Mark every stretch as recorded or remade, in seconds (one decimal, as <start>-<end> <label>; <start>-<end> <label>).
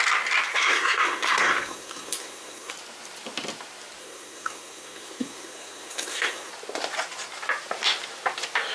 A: 0.0-0.5 recorded; 0.5-2.7 remade; 2.7-4.0 recorded; 4.0-6.5 remade; 6.5-8.7 recorded